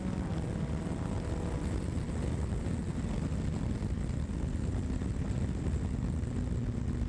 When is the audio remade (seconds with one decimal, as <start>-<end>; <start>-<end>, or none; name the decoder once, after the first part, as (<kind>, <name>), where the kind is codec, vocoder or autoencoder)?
none